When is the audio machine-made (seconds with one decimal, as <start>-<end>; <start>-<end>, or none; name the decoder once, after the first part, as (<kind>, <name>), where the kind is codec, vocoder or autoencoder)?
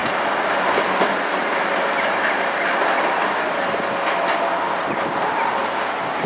none